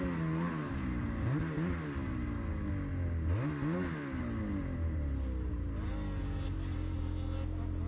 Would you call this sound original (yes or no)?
yes